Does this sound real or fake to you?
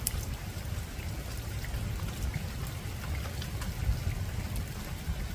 real